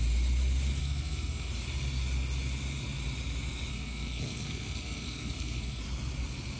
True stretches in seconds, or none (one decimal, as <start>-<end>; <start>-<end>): 0.0-0.8; 1.5-3.7; 5.8-6.6